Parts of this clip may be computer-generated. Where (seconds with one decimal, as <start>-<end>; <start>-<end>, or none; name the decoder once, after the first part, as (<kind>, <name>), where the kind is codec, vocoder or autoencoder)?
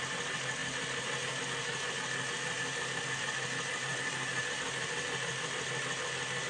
none